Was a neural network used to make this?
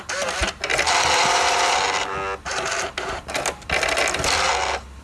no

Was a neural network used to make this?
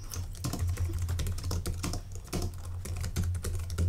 no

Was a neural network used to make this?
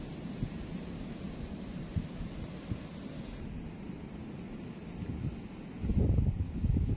no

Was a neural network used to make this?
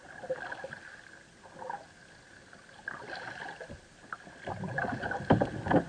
no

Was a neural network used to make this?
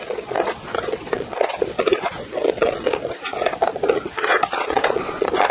yes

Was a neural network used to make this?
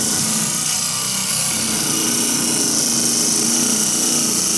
no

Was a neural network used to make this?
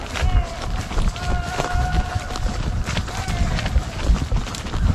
no